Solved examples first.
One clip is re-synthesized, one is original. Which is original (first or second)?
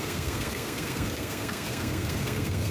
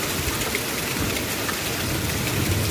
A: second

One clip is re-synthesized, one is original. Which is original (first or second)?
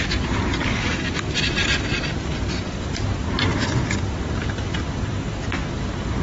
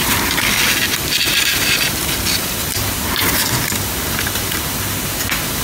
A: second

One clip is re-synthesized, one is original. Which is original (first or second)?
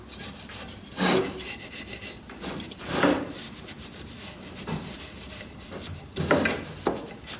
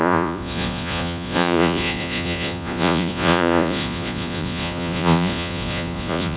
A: first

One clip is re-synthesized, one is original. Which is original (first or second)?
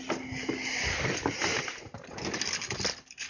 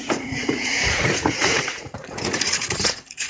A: first